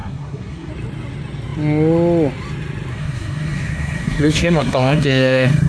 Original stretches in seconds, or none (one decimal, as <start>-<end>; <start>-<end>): 0.7-2.9